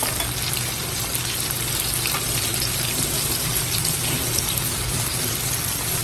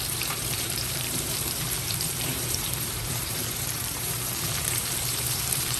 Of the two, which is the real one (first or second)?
first